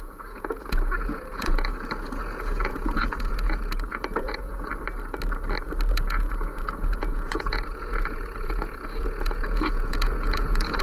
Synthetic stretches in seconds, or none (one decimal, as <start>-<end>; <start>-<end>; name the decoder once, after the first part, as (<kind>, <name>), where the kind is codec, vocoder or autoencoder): 0.0-4.7 (vocoder, Vocos); 5.9-10.8